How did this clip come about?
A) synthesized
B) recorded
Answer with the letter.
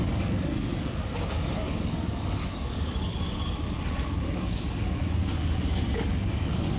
A